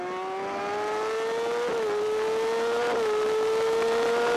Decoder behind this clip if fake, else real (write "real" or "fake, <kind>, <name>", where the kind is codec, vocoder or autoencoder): real